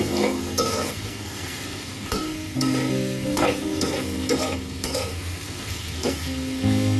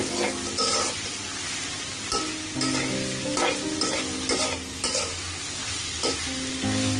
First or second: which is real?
second